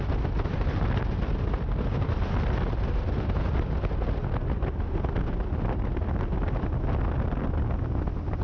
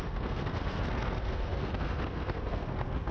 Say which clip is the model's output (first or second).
second